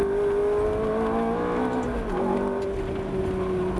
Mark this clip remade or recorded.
recorded